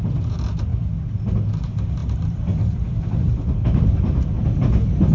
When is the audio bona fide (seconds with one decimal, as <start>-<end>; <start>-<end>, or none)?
0.0-5.1